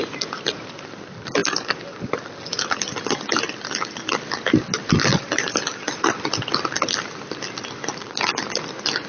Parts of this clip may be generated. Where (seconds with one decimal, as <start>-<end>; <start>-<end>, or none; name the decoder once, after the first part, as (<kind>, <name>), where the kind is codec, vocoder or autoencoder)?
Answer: 5.1-5.8 (vocoder, BigVGAN v2)